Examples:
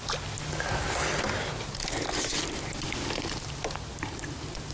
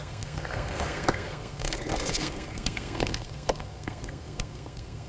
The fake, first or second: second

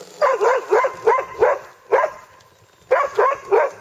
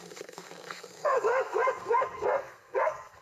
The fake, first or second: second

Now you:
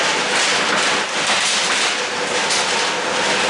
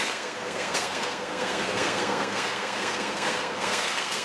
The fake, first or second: second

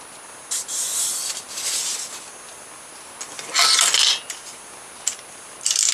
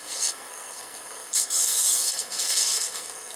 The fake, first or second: second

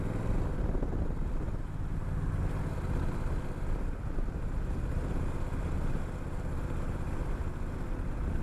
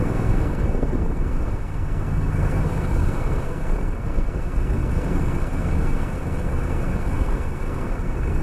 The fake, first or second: second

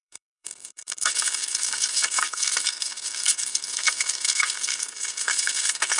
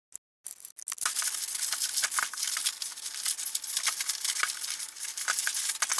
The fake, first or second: first